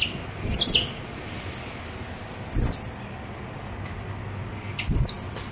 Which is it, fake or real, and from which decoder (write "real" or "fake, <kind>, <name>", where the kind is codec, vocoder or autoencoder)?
real